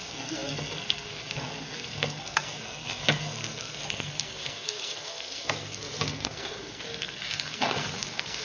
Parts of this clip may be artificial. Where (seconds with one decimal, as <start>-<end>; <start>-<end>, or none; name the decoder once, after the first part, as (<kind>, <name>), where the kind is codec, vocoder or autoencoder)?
0.0-8.4 (codec, SNAC)